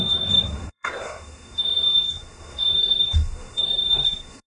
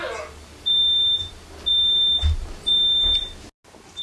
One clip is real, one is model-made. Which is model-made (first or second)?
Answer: first